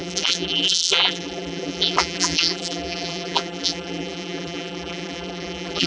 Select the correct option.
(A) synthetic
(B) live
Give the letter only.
A